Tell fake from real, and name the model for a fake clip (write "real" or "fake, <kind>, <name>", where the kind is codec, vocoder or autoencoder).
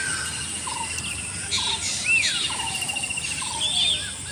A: real